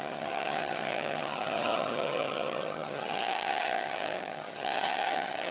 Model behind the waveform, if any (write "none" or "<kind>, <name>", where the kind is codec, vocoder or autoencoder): vocoder, HiFi-GAN